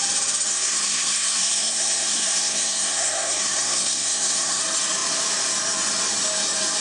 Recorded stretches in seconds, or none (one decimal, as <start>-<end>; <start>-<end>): 0.0-0.5; 4.6-6.8